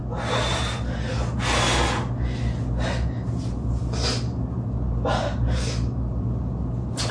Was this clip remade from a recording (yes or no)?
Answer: no